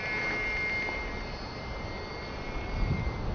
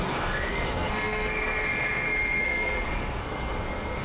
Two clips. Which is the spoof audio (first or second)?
second